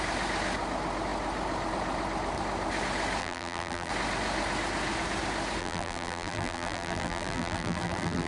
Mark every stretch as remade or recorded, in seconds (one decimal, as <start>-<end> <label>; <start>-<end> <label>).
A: 0.0-3.2 recorded; 3.2-3.9 remade; 3.9-5.6 recorded; 5.6-8.3 remade

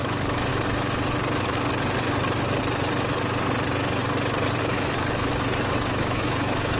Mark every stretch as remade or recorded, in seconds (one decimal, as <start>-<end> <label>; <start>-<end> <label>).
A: 0.0-0.5 remade; 0.5-4.6 recorded; 4.6-6.8 remade

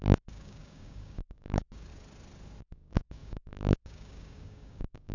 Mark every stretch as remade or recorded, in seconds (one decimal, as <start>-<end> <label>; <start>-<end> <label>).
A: 0.0-1.9 remade; 1.9-2.6 recorded; 2.6-5.1 remade

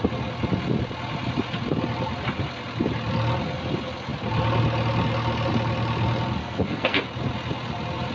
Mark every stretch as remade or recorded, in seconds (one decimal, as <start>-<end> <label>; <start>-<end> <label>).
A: 0.0-6.4 recorded; 6.4-7.0 remade; 7.0-8.1 recorded

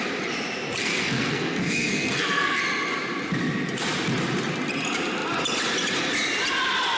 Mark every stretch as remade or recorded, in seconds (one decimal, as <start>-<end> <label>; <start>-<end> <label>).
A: 0.0-0.8 recorded; 0.8-2.6 remade; 2.6-7.0 recorded

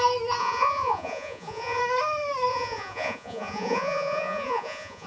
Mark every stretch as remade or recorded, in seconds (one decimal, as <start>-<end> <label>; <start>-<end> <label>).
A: 0.0-0.4 recorded; 0.4-1.8 remade; 1.8-2.5 recorded; 2.5-5.1 remade